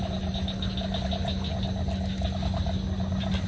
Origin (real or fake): real